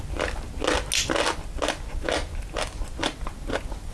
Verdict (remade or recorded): recorded